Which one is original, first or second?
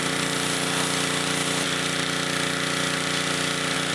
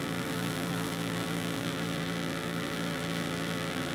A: first